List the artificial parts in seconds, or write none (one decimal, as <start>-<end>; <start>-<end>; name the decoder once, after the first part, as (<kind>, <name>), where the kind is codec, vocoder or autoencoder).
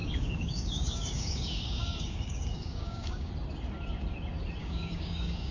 0.0-3.3 (codec, DAC); 4.6-5.5